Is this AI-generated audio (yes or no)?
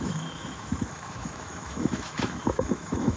yes